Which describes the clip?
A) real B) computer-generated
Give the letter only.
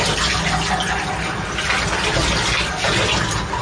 A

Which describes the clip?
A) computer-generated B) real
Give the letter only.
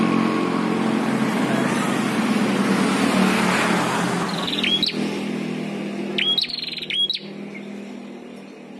B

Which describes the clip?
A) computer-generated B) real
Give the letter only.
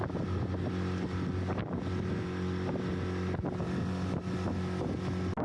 B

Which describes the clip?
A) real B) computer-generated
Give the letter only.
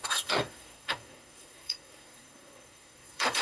B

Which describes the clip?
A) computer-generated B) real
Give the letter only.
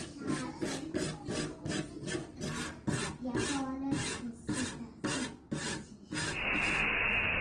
B